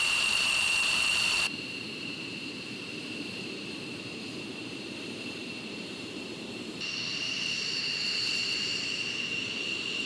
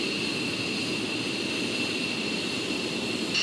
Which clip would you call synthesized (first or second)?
first